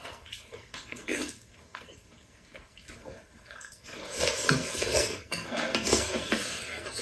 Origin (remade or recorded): remade